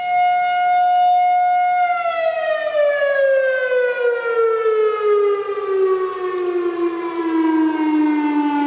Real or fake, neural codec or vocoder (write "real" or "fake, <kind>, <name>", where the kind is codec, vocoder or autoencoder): real